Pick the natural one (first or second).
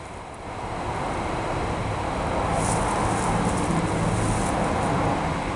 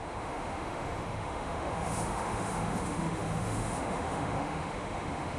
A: first